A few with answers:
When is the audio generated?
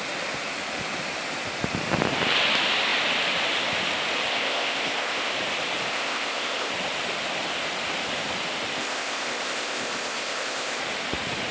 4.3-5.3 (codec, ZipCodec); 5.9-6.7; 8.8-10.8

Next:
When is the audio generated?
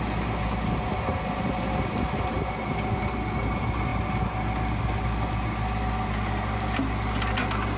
none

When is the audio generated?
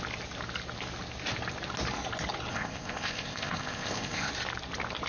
2.5-4.3 (codec, ZipCodec)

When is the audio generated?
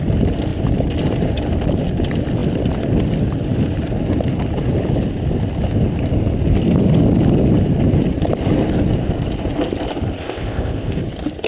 10.2-11.0 (codec, ZipCodec)